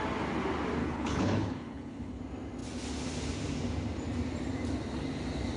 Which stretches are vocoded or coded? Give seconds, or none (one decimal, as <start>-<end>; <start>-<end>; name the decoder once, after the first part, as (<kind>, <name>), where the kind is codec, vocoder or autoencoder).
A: 0.8-2.2 (codec, HILCodec)